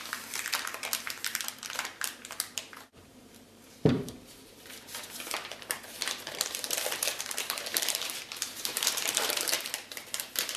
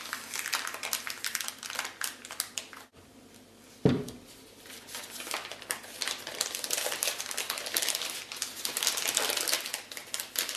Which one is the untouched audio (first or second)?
second